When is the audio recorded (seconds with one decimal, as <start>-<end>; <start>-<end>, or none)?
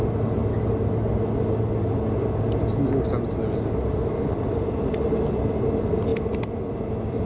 0.0-7.2